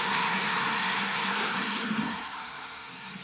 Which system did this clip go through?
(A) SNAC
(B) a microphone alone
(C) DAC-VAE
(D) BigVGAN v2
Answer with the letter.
A